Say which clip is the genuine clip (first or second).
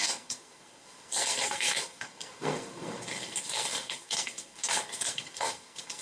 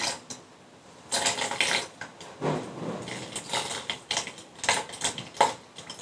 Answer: second